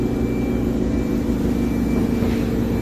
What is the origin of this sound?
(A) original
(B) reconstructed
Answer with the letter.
A